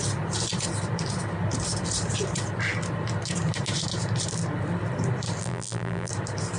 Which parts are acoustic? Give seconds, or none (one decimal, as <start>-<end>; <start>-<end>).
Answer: 0.0-5.4; 6.1-6.6